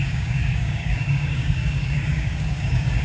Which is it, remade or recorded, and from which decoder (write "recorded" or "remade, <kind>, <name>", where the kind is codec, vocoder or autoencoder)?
remade, codec, DAC